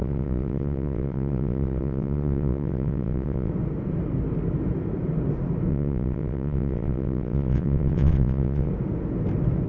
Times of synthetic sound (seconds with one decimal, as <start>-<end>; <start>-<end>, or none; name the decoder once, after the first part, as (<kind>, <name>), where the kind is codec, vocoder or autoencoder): 0.0-3.5 (vocoder, WaveNeXt); 5.7-8.7